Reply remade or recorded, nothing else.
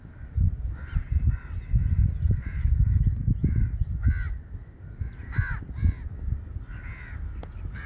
recorded